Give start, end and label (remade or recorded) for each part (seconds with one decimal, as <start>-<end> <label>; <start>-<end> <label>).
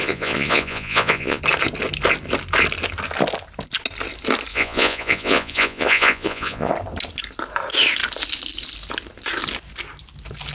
0.0-1.4 remade; 1.4-4.5 recorded; 4.5-6.7 remade; 6.7-10.5 recorded